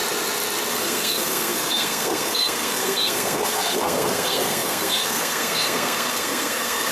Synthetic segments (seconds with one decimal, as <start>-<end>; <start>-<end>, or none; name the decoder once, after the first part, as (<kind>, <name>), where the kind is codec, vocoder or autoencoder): 0.7-6.9 (codec, SNAC)